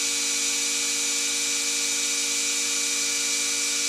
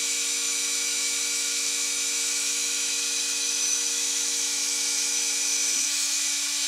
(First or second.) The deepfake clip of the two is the second